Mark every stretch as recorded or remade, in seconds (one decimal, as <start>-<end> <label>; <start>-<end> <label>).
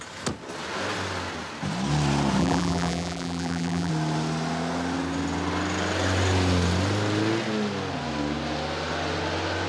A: 0.0-2.4 recorded; 2.4-3.9 remade; 3.9-9.7 recorded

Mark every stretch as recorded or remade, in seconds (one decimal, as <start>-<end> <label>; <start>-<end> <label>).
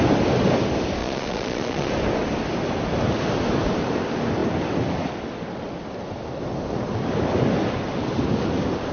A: 0.0-1.0 recorded; 1.0-1.9 remade; 1.9-8.9 recorded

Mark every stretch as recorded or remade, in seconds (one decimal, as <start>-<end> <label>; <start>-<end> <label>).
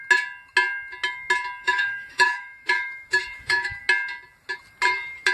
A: 0.0-1.6 recorded; 1.6-3.8 remade; 3.8-5.3 recorded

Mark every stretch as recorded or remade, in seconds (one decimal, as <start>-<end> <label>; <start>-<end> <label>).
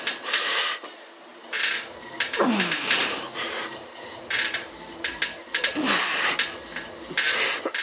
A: 0.0-1.3 recorded; 1.3-5.6 remade; 5.6-7.8 recorded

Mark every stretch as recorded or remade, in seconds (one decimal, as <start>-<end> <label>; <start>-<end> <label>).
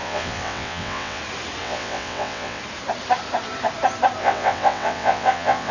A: 0.0-1.2 remade; 1.2-1.6 recorded; 1.6-2.6 remade; 2.6-4.2 recorded; 4.2-5.7 remade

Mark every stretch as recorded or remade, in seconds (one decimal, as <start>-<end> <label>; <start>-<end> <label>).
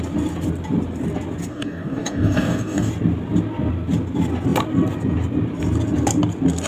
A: 0.0-1.5 recorded; 1.5-2.9 remade; 2.9-6.7 recorded